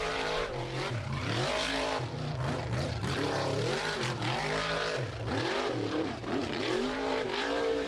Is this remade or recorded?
remade